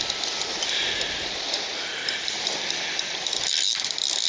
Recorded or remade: recorded